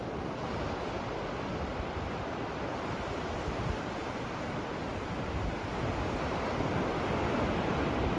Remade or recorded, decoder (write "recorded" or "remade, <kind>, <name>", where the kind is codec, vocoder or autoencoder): recorded